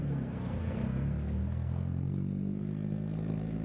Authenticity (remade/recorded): remade